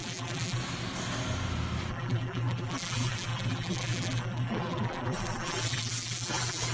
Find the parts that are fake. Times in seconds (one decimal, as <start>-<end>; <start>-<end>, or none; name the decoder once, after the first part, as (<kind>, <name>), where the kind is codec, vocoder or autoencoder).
0.0-0.6 (vocoder, BigVGAN v2); 1.9-6.7